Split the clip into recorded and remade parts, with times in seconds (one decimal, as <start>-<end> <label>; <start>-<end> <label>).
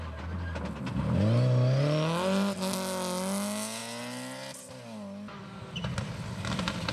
0.0-6.9 recorded